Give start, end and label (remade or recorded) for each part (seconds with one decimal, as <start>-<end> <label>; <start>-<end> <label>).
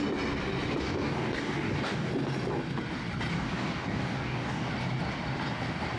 0.0-0.8 recorded; 0.8-2.1 remade; 2.1-3.3 recorded; 3.3-4.7 remade; 4.7-6.0 recorded